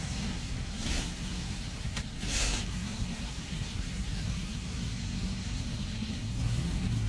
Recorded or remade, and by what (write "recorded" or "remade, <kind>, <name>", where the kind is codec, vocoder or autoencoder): remade, codec, SNAC